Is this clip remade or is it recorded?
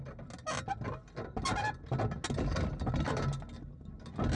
recorded